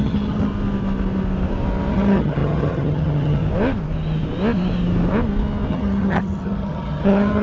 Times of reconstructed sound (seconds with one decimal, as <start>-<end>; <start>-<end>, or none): 0.0-0.5; 1.9-3.4; 5.7-7.4